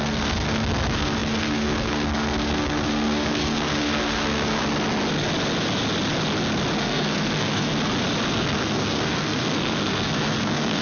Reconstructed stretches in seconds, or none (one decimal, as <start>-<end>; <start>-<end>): 0.0-4.6; 6.8-7.7; 8.3-10.8